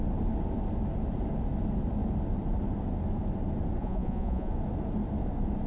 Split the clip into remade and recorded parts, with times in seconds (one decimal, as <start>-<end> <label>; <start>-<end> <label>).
0.0-3.8 recorded; 3.8-4.5 remade; 4.5-5.7 recorded